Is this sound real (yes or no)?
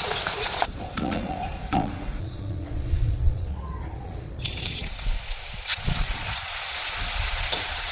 no